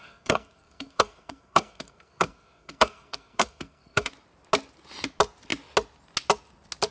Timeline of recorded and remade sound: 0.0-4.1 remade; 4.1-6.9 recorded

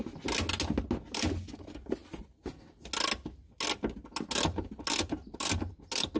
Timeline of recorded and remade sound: 0.0-6.2 recorded

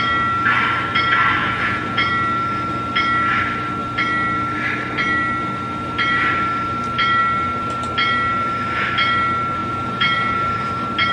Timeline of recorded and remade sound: 0.0-1.4 recorded; 1.4-2.1 remade; 2.1-9.6 recorded; 9.6-10.7 remade; 10.7-11.1 recorded

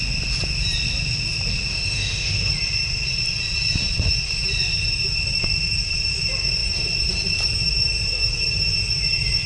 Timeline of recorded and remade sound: 0.0-1.7 recorded; 1.7-2.5 remade; 2.5-9.5 recorded

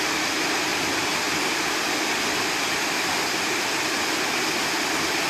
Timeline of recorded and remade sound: 0.0-5.3 recorded

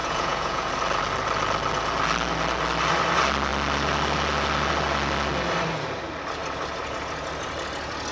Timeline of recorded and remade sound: 0.0-0.7 remade; 0.7-8.1 recorded

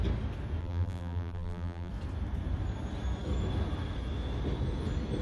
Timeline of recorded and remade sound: 0.0-0.6 recorded; 0.6-1.9 remade; 1.9-5.2 recorded

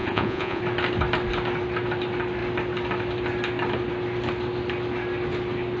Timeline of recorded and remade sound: 0.0-0.6 remade; 0.6-5.8 recorded